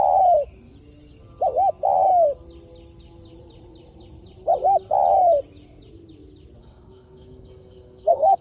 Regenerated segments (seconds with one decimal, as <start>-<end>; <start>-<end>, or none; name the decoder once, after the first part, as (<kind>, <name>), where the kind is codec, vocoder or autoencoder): 6.6-8.4 (codec, SNAC)